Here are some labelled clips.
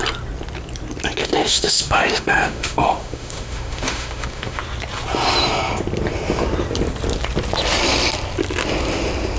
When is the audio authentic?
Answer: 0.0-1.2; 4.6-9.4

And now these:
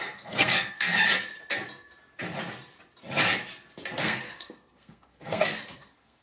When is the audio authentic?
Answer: 0.9-4.0

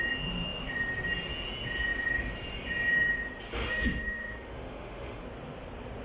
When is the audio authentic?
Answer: 0.0-3.6; 5.2-6.0

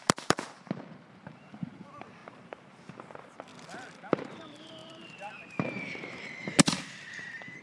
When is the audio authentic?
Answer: 3.5-4.1

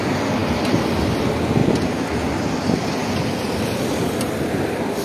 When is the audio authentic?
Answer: 0.0-5.0

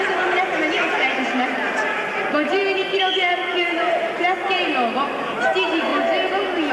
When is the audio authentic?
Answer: 0.0-6.7

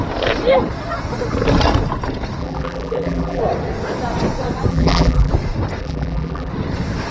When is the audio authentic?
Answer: 0.0-2.4; 3.4-4.7; 5.3-5.8; 6.5-7.1

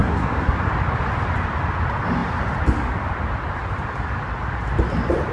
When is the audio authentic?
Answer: 0.7-5.3